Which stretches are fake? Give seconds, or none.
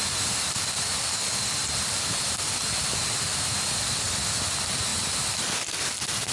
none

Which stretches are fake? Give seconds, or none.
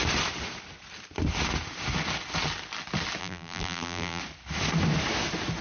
3.2-4.2 (vocoder, BigVGAN v2)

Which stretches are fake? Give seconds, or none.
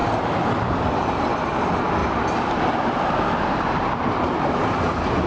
0.0-0.8 (vocoder, BigVGAN v2); 2.0-3.9